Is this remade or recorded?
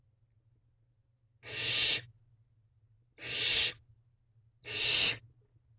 recorded